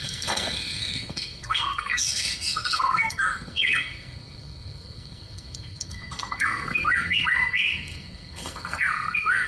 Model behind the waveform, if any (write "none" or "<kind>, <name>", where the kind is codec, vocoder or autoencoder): codec, SNAC